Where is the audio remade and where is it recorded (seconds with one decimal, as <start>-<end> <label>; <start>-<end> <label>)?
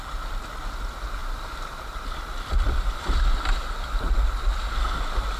0.0-1.2 recorded; 1.2-4.4 remade; 4.4-5.4 recorded